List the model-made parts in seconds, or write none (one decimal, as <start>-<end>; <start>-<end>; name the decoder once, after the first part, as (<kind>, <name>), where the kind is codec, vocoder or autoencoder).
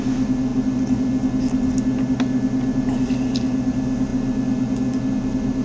none